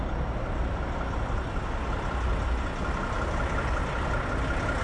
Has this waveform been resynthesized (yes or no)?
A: no